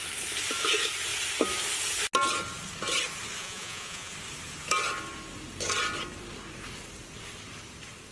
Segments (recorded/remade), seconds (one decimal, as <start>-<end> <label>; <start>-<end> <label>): 0.0-3.4 recorded; 3.4-4.1 remade; 4.1-8.1 recorded